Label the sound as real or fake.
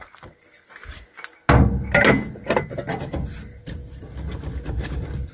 real